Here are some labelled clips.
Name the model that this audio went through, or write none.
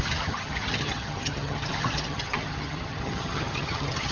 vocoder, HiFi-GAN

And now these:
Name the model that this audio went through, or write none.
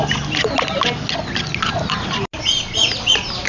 none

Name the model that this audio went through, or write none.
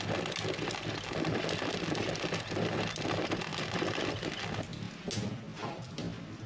none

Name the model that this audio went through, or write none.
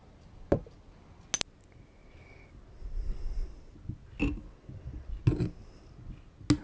none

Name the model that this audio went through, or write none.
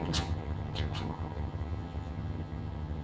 vocoder, HiFi-GAN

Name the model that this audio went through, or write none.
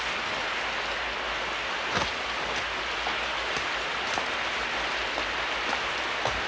none